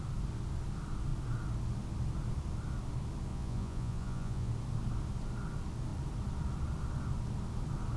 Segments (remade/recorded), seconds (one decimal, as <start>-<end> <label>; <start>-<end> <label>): 0.0-3.3 recorded; 3.3-4.5 remade; 4.5-8.0 recorded